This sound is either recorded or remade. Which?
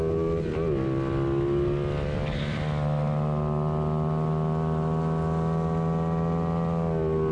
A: recorded